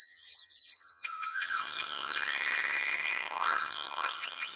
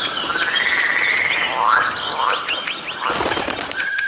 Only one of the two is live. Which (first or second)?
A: second